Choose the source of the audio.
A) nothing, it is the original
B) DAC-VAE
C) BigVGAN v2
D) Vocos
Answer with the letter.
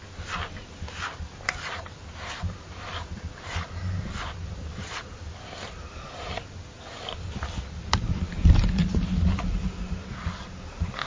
A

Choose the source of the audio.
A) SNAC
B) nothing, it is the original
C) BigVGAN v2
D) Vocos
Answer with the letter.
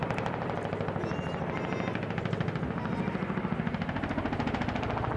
B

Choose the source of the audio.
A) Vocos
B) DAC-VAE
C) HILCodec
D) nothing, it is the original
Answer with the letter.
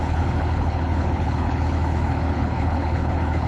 C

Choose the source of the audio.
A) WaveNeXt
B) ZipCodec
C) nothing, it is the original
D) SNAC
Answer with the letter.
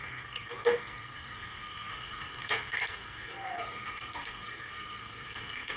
D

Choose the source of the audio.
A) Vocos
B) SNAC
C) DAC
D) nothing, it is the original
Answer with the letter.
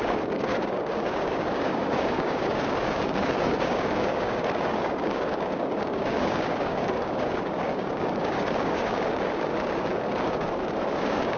C